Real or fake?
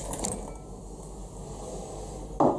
real